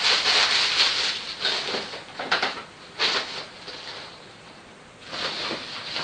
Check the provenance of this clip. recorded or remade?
recorded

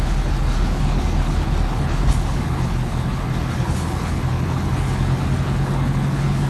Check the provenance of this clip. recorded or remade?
remade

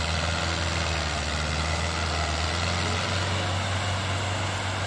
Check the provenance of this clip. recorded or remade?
recorded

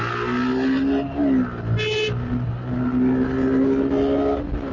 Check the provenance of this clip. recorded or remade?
recorded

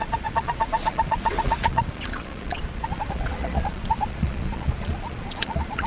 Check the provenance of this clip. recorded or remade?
remade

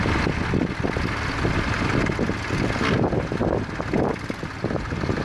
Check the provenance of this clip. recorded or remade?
recorded